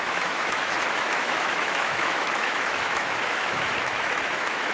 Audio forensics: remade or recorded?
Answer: remade